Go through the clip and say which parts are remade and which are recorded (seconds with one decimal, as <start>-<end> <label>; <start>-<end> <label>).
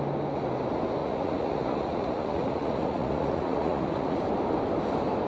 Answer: 0.0-1.0 recorded; 1.0-4.2 remade; 4.2-5.3 recorded